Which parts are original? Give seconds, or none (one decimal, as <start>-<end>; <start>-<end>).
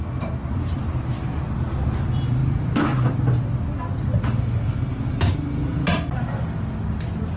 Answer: 0.0-0.4; 1.3-7.4